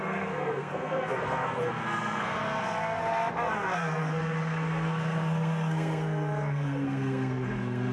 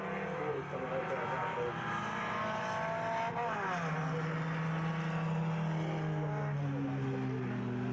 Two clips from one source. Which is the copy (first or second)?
first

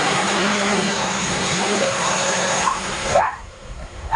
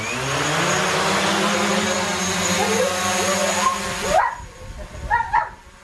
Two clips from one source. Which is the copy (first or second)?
first